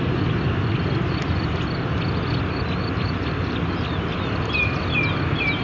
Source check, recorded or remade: recorded